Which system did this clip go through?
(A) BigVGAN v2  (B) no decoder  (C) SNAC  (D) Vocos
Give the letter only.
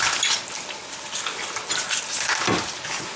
B